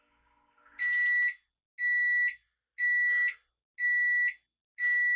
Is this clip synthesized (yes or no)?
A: no